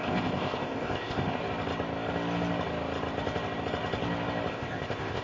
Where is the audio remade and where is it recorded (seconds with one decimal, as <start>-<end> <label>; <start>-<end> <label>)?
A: 0.0-1.4 remade; 1.4-4.5 recorded; 4.5-5.2 remade